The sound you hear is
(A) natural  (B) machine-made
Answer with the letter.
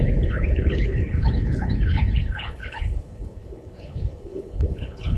B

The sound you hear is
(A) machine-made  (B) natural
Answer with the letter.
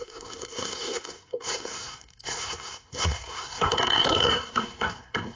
A